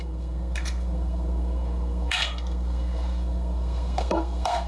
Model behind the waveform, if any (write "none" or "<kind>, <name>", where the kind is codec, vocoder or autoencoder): codec, SNAC